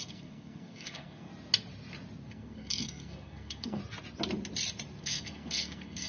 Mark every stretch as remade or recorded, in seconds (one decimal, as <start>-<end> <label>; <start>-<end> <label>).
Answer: 0.0-1.3 remade; 1.3-2.3 recorded; 2.3-3.8 remade; 3.8-5.0 recorded; 5.0-6.1 remade